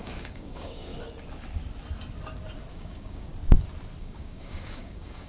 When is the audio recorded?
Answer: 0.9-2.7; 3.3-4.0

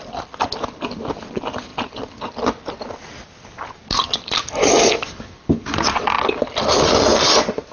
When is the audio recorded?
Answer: 0.0-7.7

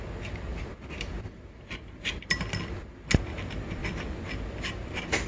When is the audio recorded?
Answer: 0.0-0.5; 2.8-3.8; 4.4-5.3

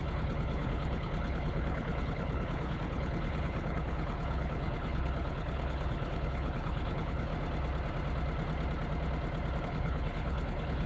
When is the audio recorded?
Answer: 7.3-9.6

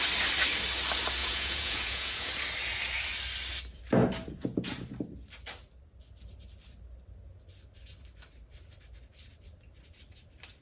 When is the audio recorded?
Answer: 0.0-1.2; 2.3-10.6

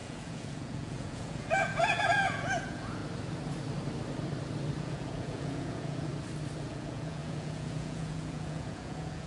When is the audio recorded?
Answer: 3.0-4.8; 6.1-6.7